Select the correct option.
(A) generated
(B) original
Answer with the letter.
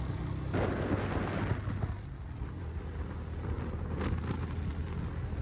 B